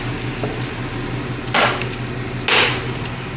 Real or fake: real